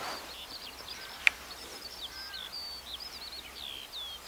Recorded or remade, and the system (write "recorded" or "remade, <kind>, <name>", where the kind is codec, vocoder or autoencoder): recorded